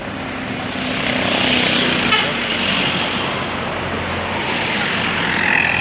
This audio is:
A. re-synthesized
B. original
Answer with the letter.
B